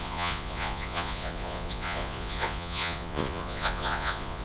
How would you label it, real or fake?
fake